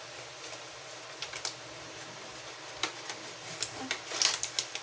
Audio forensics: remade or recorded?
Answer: recorded